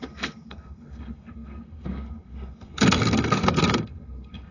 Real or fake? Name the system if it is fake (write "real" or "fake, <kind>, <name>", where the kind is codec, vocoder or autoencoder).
fake, codec, SNAC